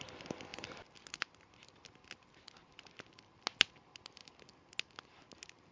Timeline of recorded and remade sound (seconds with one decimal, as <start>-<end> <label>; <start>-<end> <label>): 0.0-5.7 recorded